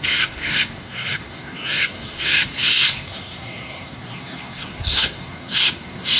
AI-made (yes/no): yes